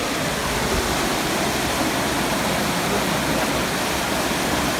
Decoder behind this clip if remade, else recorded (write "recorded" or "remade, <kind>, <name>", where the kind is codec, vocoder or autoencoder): recorded